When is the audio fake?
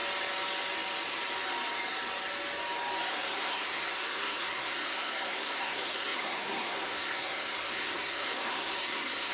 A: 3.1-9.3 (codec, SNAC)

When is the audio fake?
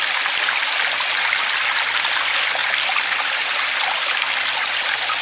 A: none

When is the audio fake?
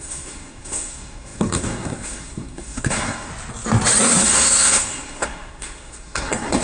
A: 0.0-3.3 (codec, SNAC); 4.0-6.6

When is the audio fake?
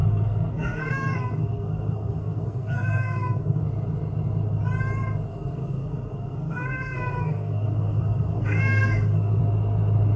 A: 0.0-3.6 (codec, SNAC); 5.3-9.4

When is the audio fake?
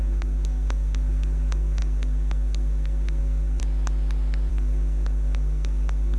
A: 0.0-3.6 (codec, SNAC); 4.5-6.2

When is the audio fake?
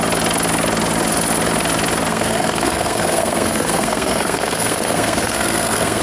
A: 2.1-6.0 (codec, SNAC)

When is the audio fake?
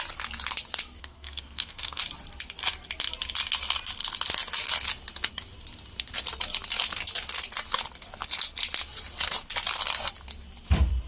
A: 1.0-2.0 (codec, SNAC)